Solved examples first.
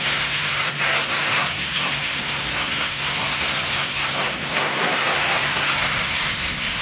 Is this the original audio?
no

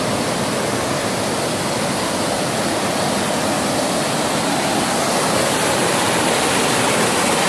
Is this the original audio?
yes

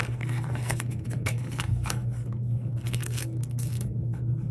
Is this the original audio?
no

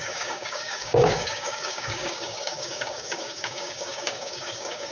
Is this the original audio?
no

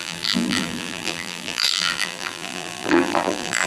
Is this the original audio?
no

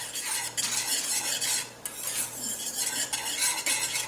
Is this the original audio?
yes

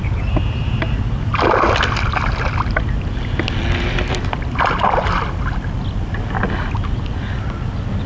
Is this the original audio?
yes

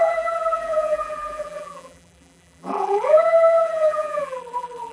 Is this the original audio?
no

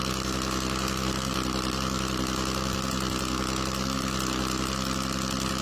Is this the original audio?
yes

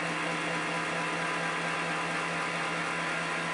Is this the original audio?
yes